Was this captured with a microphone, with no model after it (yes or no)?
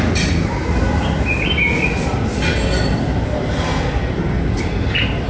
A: yes